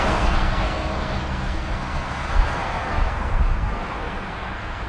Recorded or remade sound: remade